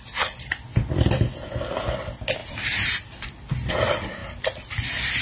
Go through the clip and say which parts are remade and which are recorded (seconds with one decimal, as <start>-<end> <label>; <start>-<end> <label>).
0.0-2.4 recorded; 2.4-3.7 remade; 3.7-4.2 recorded; 4.2-5.2 remade

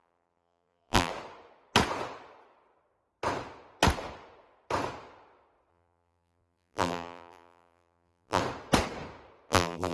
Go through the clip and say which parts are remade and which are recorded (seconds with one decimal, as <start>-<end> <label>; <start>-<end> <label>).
0.0-1.1 remade; 1.1-5.7 recorded; 5.7-8.4 remade; 8.4-9.5 recorded; 9.5-9.9 remade

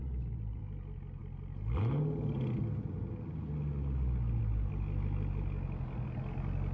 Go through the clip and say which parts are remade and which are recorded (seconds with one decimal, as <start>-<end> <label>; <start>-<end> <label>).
0.0-0.6 remade; 0.6-6.7 recorded

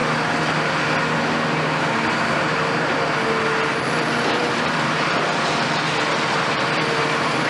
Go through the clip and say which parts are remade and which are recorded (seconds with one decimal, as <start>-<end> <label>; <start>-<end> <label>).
0.0-3.9 recorded; 3.9-7.5 remade

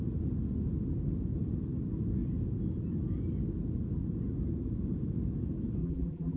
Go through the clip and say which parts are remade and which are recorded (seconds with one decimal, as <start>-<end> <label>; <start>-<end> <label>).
0.0-5.8 recorded; 5.8-6.4 remade

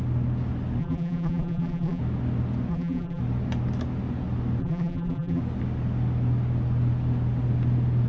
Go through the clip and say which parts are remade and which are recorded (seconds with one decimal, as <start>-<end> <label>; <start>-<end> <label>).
0.0-0.8 recorded; 0.8-2.0 remade; 2.0-2.7 recorded; 2.7-3.2 remade; 3.2-4.6 recorded; 4.6-5.4 remade; 5.4-8.1 recorded

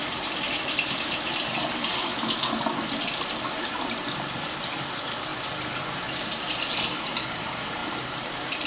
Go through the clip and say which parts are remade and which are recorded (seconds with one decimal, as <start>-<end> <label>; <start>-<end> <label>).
0.0-2.1 remade; 2.1-3.6 recorded; 3.6-5.3 remade; 5.3-5.9 recorded; 5.9-8.7 remade

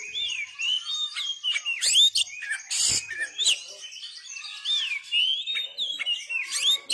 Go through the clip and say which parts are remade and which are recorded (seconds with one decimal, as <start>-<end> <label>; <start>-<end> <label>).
0.0-6.9 recorded